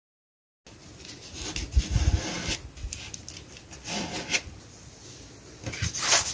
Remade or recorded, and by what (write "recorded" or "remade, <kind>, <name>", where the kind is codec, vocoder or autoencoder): recorded